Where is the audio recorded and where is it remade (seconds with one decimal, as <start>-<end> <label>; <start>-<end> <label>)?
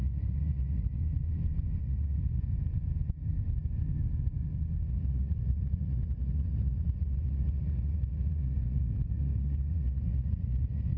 0.0-1.0 remade; 1.0-1.8 recorded; 1.8-2.5 remade; 2.5-4.9 recorded; 4.9-11.0 remade